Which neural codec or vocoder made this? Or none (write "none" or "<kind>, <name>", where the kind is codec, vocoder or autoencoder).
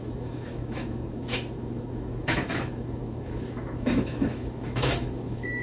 autoencoder, DAC-VAE